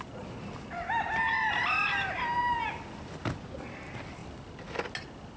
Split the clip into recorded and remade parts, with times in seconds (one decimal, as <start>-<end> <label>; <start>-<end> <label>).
0.0-5.4 recorded